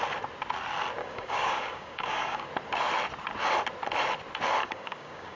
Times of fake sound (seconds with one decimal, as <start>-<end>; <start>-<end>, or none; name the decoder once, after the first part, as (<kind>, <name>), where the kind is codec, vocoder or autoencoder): 1.0-2.5 (codec, DAC); 4.6-5.4